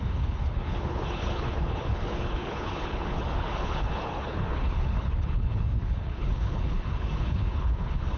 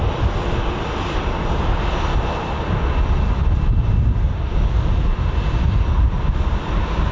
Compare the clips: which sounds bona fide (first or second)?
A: second